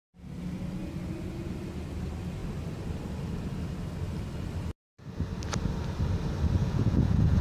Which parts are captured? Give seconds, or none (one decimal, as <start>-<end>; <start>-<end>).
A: 0.0-6.6